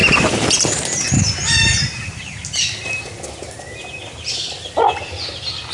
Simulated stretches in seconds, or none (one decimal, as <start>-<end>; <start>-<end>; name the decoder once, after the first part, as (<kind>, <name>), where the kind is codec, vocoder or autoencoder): none